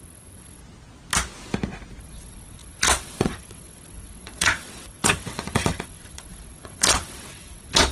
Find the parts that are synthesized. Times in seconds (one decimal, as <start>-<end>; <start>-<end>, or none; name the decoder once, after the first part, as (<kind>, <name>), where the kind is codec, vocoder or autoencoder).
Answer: 0.0-0.6 (vocoder, WaveNeXt); 2.0-7.9